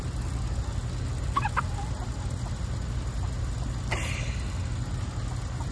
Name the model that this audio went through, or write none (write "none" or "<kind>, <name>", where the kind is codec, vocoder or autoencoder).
none